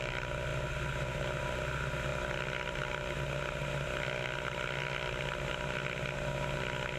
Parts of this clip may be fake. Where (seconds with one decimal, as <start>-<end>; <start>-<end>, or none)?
none